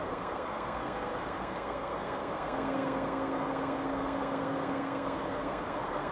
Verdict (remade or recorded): remade